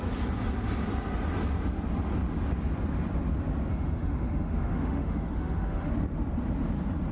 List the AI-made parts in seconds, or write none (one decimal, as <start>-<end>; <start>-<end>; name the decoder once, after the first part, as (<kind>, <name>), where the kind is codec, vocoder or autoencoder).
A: 3.7-5.9 (autoencoder, DAC-VAE)